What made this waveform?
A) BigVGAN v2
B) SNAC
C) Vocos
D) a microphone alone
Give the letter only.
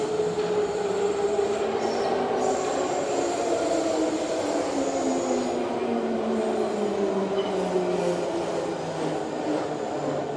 D